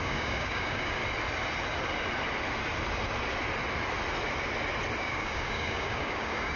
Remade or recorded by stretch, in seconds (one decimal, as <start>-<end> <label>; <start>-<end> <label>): 0.0-1.0 remade; 1.0-5.0 recorded; 5.0-6.6 remade